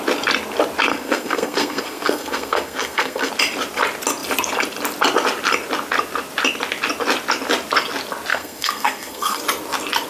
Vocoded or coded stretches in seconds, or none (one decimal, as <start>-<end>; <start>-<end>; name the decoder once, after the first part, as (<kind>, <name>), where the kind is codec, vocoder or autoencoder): 0.9-3.3 (codec, SNAC); 8.3-9.4